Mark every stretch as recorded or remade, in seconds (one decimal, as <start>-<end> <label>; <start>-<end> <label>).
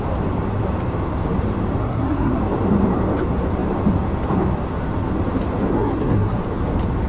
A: 0.0-1.8 recorded; 1.8-2.4 remade; 2.4-5.7 recorded; 5.7-6.4 remade; 6.4-7.1 recorded